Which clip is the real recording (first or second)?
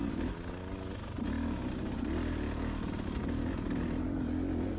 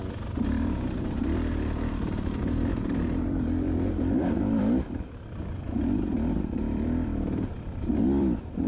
first